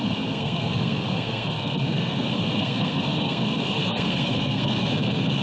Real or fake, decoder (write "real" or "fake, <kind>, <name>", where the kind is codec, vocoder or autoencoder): fake, codec, SNAC